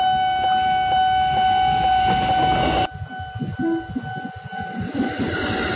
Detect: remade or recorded recorded